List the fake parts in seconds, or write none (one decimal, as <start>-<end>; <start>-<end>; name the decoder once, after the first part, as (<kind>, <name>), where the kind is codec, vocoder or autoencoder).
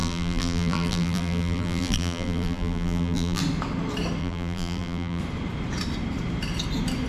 0.0-3.4 (vocoder, BigVGAN v2); 4.2-5.2